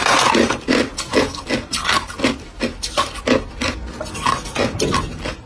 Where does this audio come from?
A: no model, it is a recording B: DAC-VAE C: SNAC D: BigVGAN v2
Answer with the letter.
A